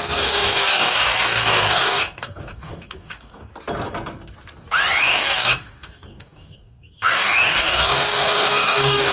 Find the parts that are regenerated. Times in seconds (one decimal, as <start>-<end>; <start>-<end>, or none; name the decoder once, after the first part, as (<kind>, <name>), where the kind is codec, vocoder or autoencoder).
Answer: 0.0-3.5 (codec, DAC); 5.0-9.1